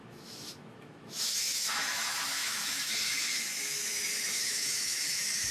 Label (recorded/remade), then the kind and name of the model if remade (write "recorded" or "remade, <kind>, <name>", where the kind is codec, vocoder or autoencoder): remade, autoencoder, DAC-VAE